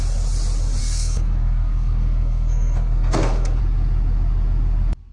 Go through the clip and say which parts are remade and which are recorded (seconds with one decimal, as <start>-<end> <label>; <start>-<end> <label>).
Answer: 0.0-0.8 recorded; 0.8-3.6 remade; 3.6-5.1 recorded